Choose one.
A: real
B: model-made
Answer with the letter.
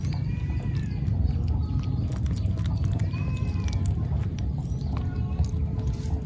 A